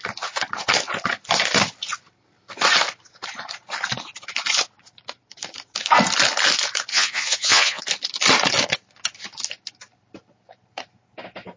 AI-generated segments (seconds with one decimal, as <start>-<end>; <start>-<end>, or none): 6.9-7.8